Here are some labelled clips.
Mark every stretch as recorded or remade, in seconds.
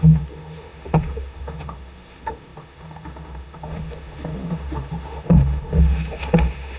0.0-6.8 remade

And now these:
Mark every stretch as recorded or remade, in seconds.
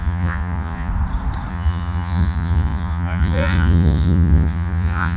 0.0-0.9 remade; 0.9-1.5 recorded; 1.5-5.2 remade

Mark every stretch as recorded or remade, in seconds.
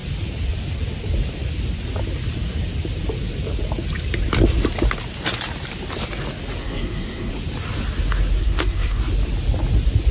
0.0-6.6 recorded; 6.6-7.3 remade; 7.3-8.4 recorded; 8.4-9.0 remade; 9.0-10.1 recorded